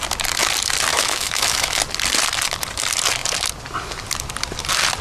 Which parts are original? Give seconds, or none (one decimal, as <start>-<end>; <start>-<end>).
0.0-0.9; 1.8-5.0